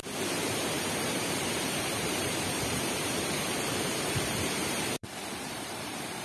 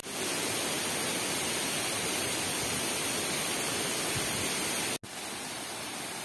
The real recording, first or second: second